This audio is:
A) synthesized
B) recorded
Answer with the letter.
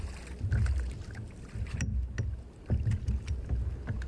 B